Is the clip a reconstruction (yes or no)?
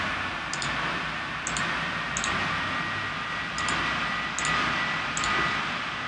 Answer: no